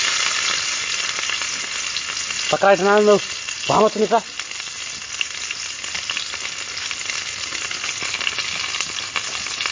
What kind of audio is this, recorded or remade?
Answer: recorded